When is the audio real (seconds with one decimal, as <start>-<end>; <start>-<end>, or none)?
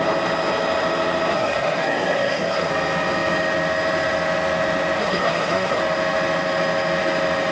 0.0-1.3; 2.7-5.0; 5.8-7.5